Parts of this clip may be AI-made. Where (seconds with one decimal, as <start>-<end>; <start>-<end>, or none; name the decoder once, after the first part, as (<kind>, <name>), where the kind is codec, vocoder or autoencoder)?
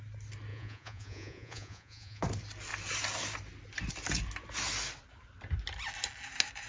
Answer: 0.5-2.2 (vocoder, Vocos)